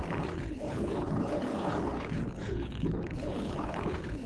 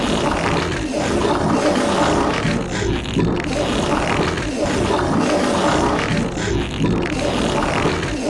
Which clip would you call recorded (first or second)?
second